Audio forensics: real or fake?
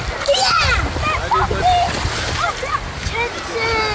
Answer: real